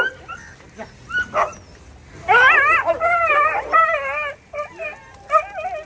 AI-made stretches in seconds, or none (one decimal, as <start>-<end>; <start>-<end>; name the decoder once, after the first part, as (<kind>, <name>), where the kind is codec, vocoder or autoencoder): none